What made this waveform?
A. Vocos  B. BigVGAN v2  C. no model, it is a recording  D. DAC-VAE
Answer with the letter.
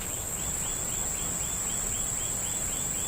C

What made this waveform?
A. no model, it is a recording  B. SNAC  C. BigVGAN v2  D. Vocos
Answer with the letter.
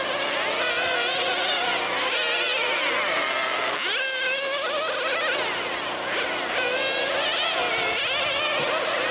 A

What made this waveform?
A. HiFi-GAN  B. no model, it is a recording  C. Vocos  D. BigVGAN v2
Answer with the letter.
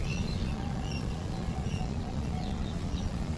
C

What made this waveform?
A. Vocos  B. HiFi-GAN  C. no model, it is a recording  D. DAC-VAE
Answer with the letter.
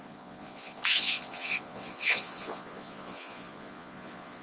A